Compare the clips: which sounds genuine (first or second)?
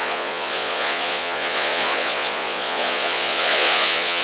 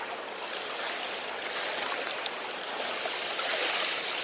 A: second